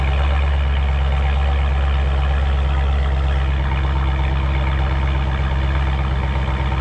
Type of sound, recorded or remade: recorded